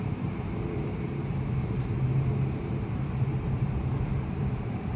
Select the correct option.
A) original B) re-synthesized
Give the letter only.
B